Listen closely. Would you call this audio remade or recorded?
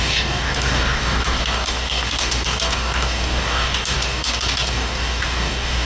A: remade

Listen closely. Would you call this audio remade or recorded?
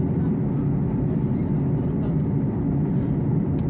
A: recorded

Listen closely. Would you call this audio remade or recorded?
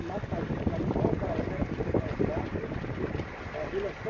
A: recorded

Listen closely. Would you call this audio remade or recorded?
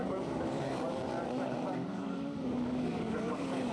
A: remade